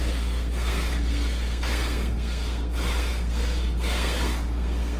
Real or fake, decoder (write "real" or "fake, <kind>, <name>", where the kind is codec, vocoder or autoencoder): fake, codec, SNAC